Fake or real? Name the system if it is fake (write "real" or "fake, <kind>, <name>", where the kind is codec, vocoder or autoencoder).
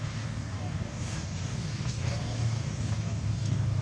fake, codec, DAC